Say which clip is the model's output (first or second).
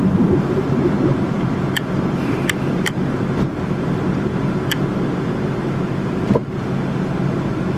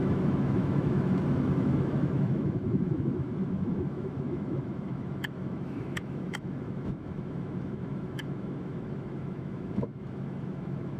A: second